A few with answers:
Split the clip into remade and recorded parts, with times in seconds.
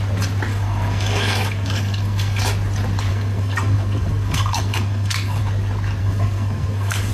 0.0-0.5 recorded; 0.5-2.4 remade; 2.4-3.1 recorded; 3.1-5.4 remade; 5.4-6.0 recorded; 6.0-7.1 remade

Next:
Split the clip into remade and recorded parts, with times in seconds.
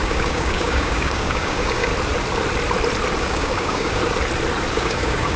0.0-1.9 remade; 1.9-3.2 recorded; 3.2-4.0 remade; 4.0-4.7 recorded; 4.7-5.4 remade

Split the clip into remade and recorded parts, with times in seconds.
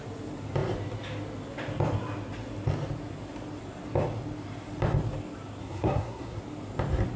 0.0-5.6 recorded; 5.6-6.4 remade; 6.4-7.2 recorded